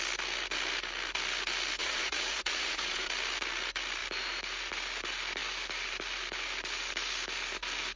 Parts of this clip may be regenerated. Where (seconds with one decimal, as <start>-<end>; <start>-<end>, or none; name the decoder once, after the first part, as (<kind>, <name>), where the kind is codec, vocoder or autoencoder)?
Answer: 1.8-3.1 (vocoder, Vocos)